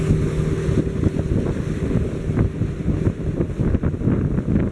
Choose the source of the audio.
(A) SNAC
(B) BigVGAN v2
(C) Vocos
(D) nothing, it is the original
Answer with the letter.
D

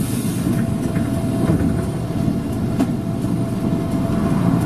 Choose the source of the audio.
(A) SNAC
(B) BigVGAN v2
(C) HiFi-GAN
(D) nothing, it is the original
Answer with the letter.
D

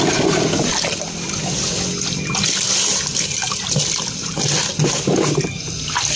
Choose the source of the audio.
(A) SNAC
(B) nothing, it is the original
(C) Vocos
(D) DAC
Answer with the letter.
B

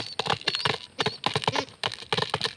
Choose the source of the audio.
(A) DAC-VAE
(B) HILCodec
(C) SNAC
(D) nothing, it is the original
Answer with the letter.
D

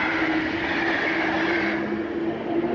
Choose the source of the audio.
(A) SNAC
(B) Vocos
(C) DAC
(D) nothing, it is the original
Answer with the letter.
D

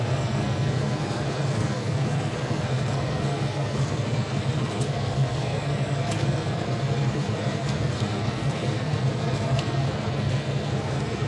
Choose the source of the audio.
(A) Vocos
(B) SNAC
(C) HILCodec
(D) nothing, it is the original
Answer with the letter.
B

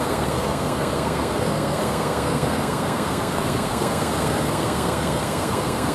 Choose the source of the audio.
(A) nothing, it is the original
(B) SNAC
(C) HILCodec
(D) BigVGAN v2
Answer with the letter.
B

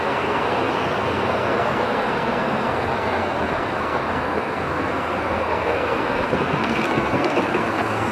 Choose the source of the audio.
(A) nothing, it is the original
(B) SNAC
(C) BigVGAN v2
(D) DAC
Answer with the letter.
B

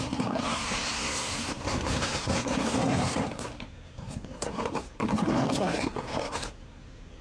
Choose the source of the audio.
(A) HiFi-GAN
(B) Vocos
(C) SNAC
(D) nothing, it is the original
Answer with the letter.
C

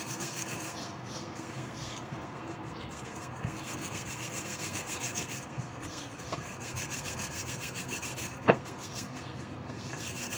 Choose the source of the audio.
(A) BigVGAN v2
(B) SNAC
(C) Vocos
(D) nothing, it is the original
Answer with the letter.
B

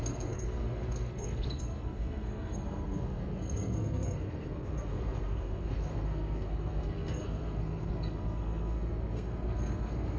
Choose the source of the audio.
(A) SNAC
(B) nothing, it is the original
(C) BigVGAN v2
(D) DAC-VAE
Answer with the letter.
A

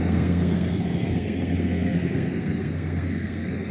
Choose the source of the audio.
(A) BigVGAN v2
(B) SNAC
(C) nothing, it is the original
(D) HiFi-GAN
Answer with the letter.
B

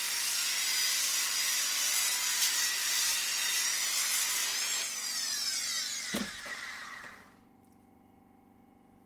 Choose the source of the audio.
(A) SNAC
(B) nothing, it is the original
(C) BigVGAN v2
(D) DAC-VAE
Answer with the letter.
B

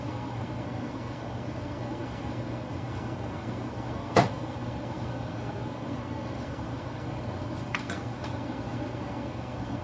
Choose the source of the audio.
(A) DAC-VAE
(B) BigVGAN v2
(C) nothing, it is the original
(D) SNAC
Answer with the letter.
D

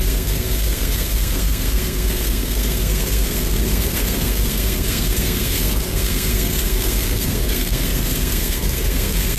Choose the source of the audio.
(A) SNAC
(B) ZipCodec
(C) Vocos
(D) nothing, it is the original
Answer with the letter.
A